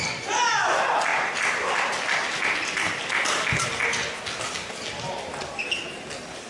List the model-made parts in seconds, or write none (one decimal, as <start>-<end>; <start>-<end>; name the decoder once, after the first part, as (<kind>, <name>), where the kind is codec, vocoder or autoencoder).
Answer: none